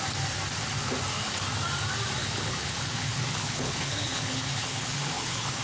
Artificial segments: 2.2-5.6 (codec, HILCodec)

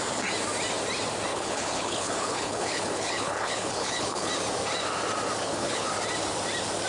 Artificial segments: 1.3-4.3 (codec, HILCodec); 5.4-5.9

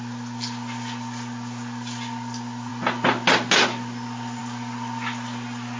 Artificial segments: none

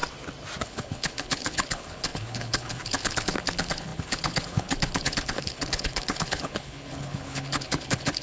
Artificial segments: 0.6-8.2 (codec, HILCodec)

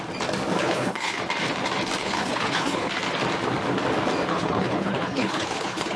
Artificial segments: 0.6-1.2 (codec, HILCodec); 2.0-2.9; 4.3-6.0